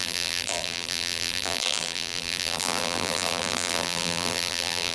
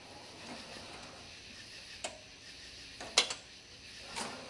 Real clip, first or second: second